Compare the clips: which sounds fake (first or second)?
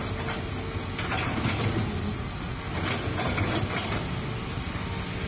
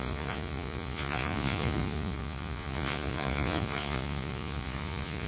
second